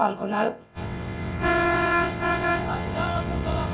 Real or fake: fake